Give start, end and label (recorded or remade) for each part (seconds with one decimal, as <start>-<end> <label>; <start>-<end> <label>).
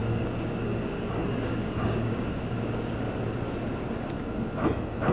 0.0-3.1 remade; 3.1-5.1 recorded